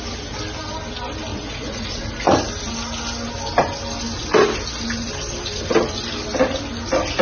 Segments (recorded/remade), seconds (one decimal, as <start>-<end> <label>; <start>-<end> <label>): 0.0-1.3 recorded; 1.3-2.5 remade; 2.5-7.2 recorded